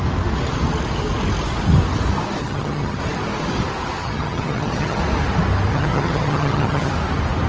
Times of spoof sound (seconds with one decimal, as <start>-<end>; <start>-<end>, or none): 2.4-3.0; 4.0-5.0; 5.7-6.9